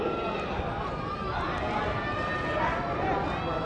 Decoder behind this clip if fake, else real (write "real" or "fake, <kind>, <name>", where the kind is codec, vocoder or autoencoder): real